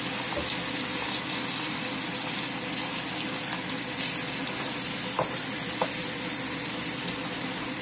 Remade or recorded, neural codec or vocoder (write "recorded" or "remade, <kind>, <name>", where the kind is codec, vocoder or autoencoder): recorded